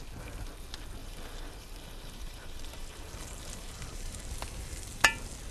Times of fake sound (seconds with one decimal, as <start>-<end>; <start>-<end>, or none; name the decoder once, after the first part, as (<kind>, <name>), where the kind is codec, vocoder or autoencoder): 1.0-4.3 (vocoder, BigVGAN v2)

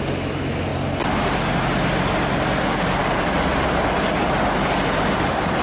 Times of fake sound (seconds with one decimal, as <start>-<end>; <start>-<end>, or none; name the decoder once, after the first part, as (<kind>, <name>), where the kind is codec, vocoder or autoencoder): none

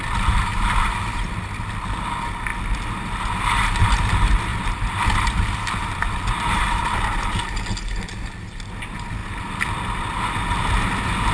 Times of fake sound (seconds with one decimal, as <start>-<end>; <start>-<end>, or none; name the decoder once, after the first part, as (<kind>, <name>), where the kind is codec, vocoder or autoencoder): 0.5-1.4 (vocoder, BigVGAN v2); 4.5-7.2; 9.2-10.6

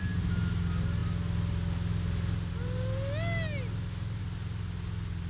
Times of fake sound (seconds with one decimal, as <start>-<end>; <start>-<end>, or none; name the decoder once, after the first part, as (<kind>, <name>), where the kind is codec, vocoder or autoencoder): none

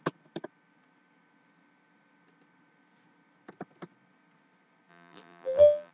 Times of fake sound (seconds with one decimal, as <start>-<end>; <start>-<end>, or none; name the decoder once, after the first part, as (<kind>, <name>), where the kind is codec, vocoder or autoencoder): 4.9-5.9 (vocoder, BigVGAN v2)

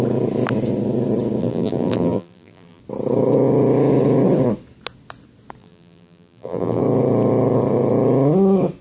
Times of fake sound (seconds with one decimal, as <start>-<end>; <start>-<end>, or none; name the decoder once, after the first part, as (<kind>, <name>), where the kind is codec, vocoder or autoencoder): 1.4-2.8 (vocoder, BigVGAN v2); 5.6-6.8

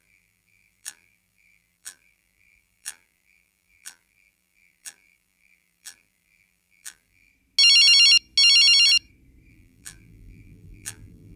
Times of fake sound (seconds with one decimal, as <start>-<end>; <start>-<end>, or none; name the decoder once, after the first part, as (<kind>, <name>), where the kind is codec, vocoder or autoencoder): 0.0-7.3 (vocoder, BigVGAN v2); 9.5-11.4